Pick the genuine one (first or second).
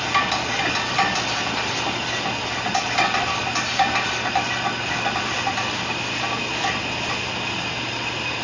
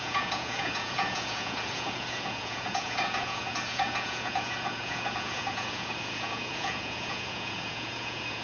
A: first